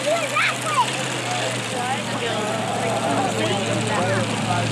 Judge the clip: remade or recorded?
recorded